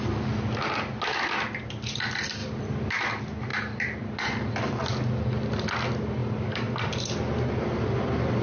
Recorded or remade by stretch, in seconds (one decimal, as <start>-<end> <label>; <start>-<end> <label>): 0.0-8.4 recorded

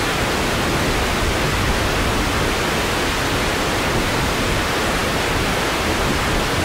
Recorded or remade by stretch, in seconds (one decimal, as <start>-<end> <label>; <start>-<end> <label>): 0.0-6.6 recorded